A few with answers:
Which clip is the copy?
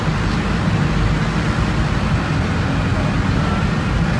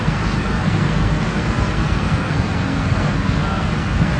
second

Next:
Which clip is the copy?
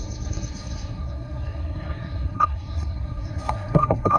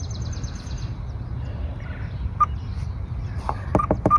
first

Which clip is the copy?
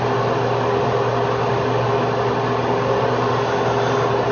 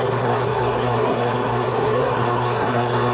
second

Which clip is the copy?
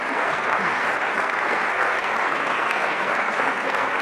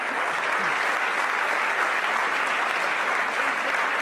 first